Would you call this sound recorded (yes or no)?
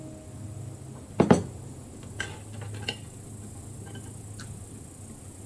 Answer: yes